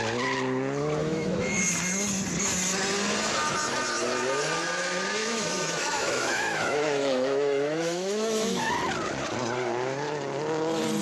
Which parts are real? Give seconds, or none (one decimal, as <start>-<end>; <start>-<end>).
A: 0.0-1.0; 1.6-5.2; 8.7-11.0